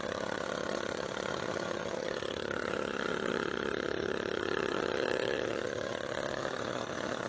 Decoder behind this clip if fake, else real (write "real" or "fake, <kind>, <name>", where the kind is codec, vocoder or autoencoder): fake, vocoder, HiFi-GAN